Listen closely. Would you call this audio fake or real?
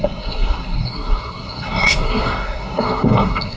fake